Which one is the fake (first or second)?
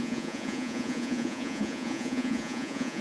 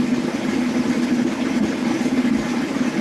first